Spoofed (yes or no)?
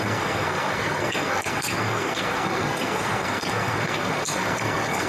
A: yes